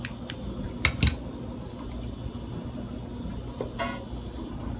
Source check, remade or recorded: recorded